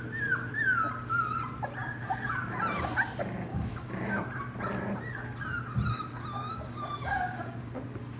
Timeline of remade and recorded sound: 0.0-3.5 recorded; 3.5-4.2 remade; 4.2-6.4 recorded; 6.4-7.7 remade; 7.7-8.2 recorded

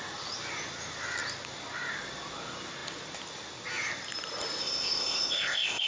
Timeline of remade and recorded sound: 0.0-4.6 recorded; 4.6-5.9 remade

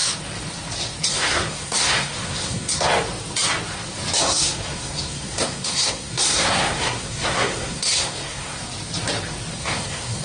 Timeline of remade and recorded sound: 0.0-1.1 recorded; 1.1-2.9 remade; 2.9-4.2 recorded; 4.2-8.6 remade; 8.6-9.6 recorded; 9.6-10.2 remade

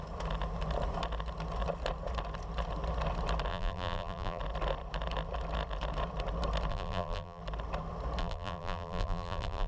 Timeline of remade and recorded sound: 0.0-3.5 recorded; 3.5-4.4 remade; 4.4-6.7 recorded; 6.7-7.4 remade; 7.4-8.2 recorded; 8.2-9.7 remade